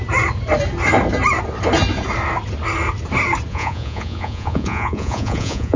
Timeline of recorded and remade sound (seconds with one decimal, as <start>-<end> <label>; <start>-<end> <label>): 0.0-3.5 recorded; 3.5-5.8 remade